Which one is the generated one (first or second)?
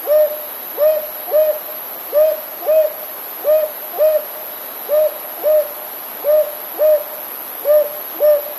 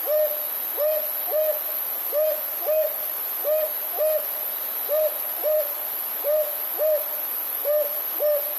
second